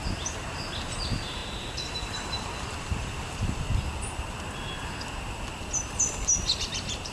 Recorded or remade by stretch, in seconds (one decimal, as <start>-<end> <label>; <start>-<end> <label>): 0.0-1.4 remade; 1.4-1.9 recorded; 1.9-3.7 remade; 3.7-6.6 recorded; 6.6-7.1 remade